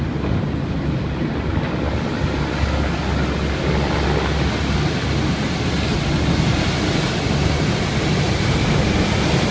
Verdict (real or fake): real